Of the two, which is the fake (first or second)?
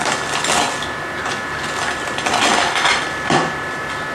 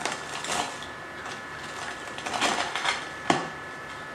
second